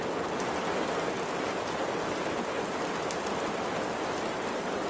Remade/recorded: recorded